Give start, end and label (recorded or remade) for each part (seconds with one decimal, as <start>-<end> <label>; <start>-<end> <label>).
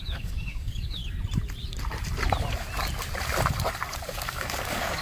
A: 0.0-1.0 remade; 1.0-4.0 recorded; 4.0-5.0 remade